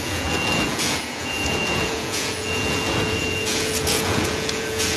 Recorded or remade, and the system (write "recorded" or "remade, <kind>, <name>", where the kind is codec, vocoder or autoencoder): remade, vocoder, Vocos